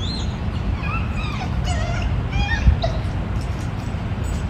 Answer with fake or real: real